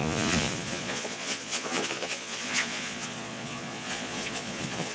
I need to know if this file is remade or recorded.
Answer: remade